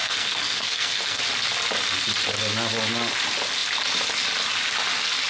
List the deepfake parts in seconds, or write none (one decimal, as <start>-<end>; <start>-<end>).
0.0-1.2